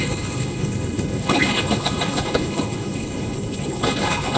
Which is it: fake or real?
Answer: fake